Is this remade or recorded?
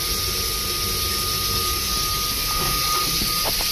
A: recorded